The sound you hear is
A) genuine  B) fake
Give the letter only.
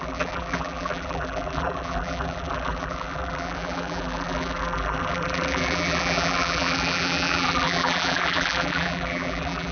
B